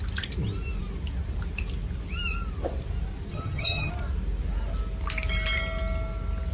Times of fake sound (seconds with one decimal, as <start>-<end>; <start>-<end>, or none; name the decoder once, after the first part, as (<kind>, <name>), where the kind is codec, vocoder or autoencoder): 3.3-3.9 (vocoder, HiFi-GAN)